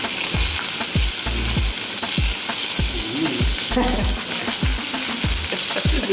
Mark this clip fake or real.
real